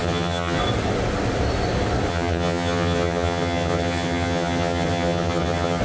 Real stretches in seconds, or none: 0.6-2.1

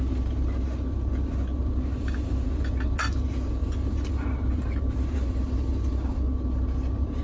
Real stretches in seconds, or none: 0.0-7.2

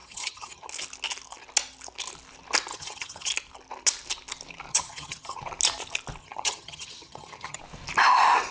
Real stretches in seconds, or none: 0.7-2.7; 3.3-4.7; 5.4-6.2; 7.6-8.5

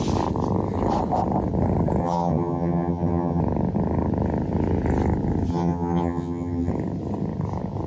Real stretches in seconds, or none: 0.0-2.0; 3.4-5.5; 6.7-7.9

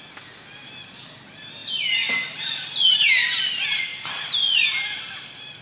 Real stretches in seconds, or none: 0.0-5.6